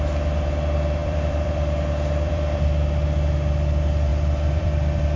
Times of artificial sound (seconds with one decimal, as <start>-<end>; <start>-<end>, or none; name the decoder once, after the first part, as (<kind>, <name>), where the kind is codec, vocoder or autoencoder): 1.0-2.6 (vocoder, BigVGAN v2); 4.1-5.2